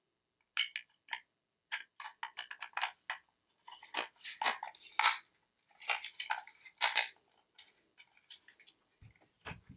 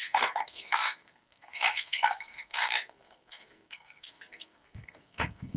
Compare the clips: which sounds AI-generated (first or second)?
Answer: second